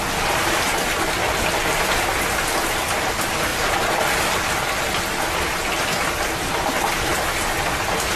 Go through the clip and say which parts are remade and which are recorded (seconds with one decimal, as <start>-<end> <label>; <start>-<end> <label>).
0.0-8.2 recorded